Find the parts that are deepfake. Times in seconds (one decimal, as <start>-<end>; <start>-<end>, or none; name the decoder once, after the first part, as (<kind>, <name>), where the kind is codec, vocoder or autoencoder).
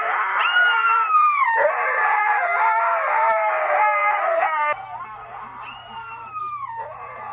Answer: 0.8-2.2 (vocoder, BigVGAN v2)